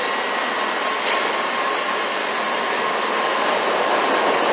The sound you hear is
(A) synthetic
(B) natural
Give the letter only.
A